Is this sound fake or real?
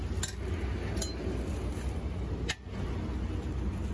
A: real